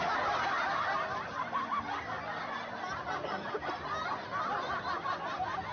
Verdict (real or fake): real